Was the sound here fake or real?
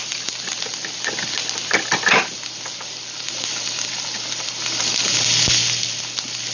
real